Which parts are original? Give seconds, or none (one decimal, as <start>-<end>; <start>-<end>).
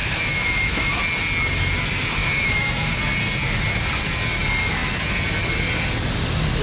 1.0-2.2; 3.0-6.6